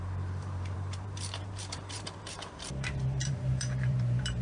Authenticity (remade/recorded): remade